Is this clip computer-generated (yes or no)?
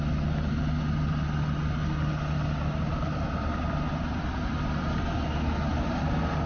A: no